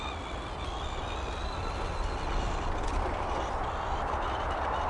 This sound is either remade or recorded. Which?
recorded